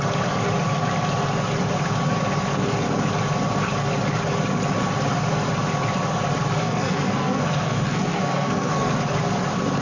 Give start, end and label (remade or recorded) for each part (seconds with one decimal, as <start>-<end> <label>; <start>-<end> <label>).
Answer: 0.0-6.6 recorded; 6.6-8.9 remade; 8.9-9.8 recorded